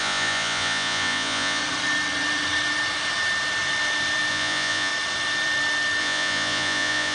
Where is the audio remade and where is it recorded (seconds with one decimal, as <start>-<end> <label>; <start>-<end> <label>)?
0.0-1.6 remade; 1.6-4.3 recorded; 4.3-4.9 remade; 4.9-6.0 recorded; 6.0-7.1 remade

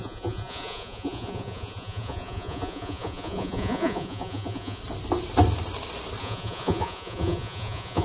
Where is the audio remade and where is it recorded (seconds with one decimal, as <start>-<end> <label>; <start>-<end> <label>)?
0.0-4.8 remade; 4.8-6.2 recorded; 6.2-8.0 remade

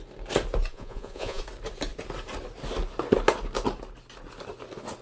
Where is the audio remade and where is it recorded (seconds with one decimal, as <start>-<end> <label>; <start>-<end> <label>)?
0.0-0.7 recorded; 0.7-1.4 remade; 1.4-5.0 recorded

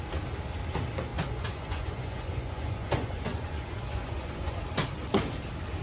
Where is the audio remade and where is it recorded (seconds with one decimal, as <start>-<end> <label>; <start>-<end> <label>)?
0.0-1.1 recorded; 1.1-4.6 remade; 4.6-5.8 recorded

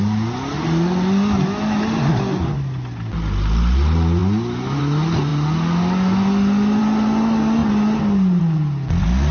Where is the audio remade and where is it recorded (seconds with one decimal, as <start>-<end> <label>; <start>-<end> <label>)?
0.0-9.3 recorded

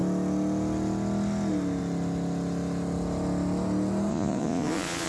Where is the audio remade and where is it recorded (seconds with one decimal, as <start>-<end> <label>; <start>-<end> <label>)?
0.0-4.1 recorded; 4.1-5.1 remade